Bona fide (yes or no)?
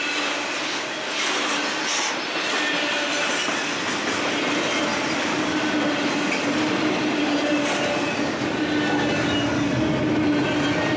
yes